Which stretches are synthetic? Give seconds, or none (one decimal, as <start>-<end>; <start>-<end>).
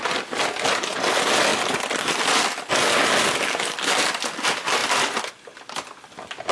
none